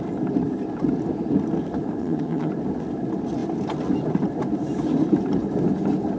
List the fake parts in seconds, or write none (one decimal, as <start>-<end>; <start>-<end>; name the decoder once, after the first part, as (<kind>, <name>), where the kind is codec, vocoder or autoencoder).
2.0-2.5 (vocoder, HiFi-GAN)